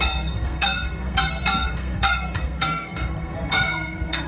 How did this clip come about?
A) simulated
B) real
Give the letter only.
A